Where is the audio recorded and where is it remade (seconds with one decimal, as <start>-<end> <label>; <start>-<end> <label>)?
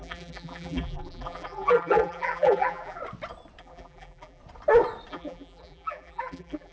0.0-3.0 remade; 3.0-3.6 recorded; 3.6-4.4 remade; 4.4-5.1 recorded; 5.1-6.7 remade